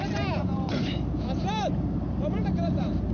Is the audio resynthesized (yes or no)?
yes